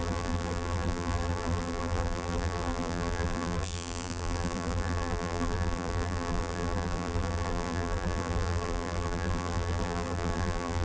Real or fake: fake